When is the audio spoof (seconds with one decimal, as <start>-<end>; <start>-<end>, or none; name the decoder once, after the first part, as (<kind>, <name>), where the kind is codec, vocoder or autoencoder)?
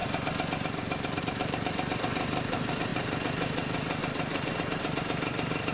1.2-5.7 (vocoder, BigVGAN v2)